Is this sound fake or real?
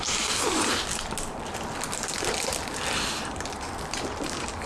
real